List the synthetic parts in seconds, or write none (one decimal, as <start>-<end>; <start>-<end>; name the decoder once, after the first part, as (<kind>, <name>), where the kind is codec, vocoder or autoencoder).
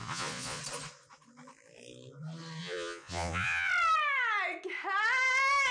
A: 0.0-0.6 (vocoder, Vocos); 2.6-3.7